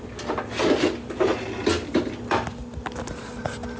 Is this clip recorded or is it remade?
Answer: recorded